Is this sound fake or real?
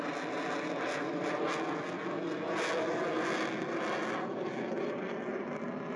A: real